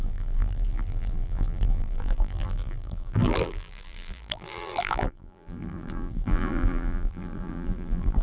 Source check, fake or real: fake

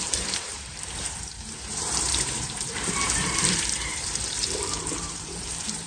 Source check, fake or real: fake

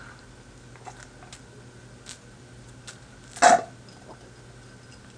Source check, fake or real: real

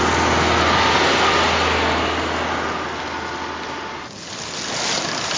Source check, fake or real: real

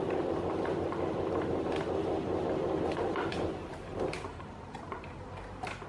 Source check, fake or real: fake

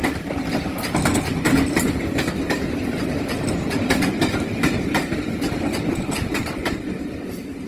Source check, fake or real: fake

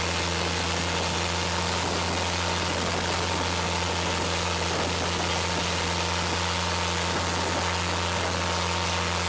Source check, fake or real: real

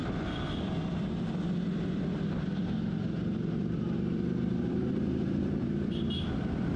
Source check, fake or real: fake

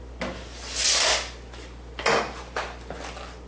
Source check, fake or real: real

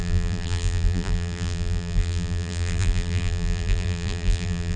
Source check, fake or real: fake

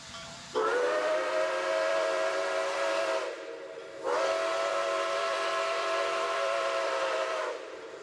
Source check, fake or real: fake